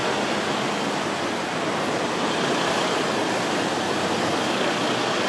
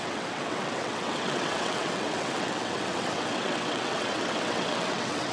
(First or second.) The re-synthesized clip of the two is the second